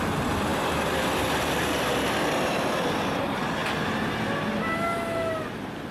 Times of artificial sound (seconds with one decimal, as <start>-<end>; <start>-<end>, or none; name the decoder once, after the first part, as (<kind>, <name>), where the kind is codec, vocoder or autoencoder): 0.5-2.7 (vocoder, BigVGAN v2)